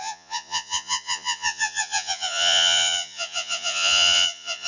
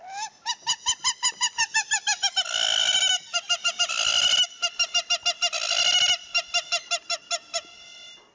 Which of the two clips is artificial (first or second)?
first